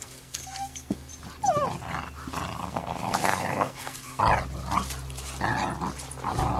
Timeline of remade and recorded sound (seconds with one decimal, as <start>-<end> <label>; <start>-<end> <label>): 0.0-1.1 remade; 1.1-2.6 recorded; 2.6-4.2 remade; 4.2-6.6 recorded